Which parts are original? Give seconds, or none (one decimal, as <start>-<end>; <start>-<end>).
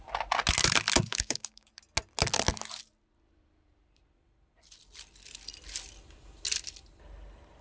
0.0-1.1; 1.7-7.6